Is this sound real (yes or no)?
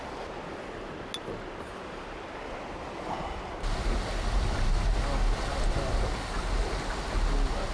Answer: yes